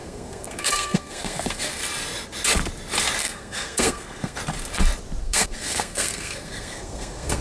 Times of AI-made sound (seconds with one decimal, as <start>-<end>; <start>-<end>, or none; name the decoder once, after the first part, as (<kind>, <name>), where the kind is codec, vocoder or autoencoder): 0.0-1.8 (codec, SNAC); 3.2-4.4; 5.2-7.4